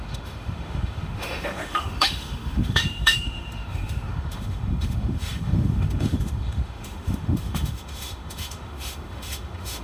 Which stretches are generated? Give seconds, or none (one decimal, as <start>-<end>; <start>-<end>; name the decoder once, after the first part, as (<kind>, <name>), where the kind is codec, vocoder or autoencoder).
0.0-9.8 (autoencoder, DAC-VAE)